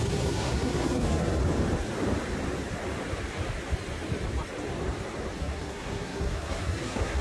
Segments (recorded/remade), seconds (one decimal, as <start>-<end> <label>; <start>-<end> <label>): 0.0-1.4 remade; 1.4-5.4 recorded; 5.4-7.2 remade